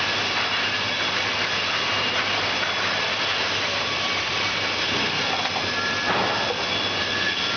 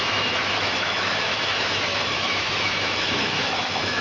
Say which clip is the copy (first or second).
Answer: second